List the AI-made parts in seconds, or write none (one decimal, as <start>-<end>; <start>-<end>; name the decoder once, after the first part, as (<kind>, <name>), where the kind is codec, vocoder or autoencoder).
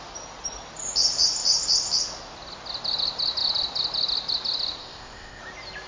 4.8-5.4 (codec, ZipCodec)